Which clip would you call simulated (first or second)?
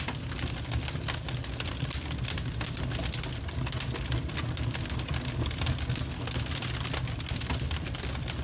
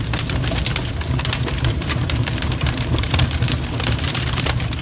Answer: second